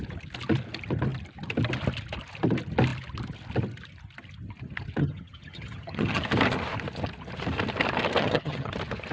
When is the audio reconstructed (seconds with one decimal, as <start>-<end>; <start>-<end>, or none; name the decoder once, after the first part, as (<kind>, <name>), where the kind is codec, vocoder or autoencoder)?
5.0-6.2 (vocoder, HiFi-GAN); 8.2-8.7